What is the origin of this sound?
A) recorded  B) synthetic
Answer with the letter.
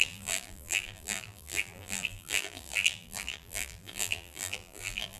B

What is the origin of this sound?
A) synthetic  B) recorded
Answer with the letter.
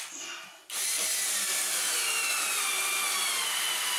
B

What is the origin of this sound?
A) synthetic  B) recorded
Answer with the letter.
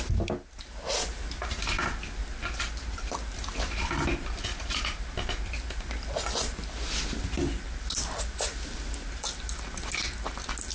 B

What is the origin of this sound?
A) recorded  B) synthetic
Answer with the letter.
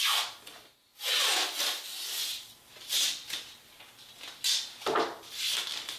A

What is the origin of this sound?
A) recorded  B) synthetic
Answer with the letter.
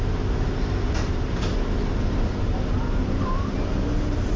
B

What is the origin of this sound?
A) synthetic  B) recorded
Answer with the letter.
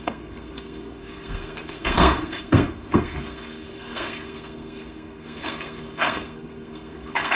A